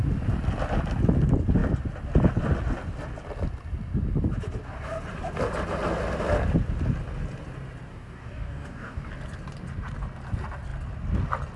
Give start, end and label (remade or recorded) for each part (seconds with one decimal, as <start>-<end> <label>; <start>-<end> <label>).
0.0-7.9 recorded; 7.9-9.1 remade; 9.1-11.6 recorded